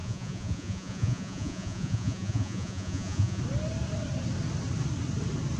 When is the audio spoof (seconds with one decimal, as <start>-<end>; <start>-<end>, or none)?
0.0-3.4